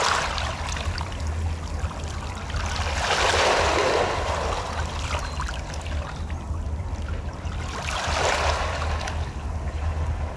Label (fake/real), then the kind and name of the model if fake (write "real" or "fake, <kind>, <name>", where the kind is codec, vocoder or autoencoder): real